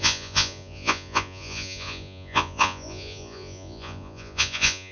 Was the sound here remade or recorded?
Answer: remade